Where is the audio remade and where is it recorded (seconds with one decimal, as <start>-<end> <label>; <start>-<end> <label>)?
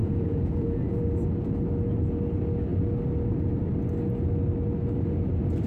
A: 0.0-1.0 remade; 1.0-5.7 recorded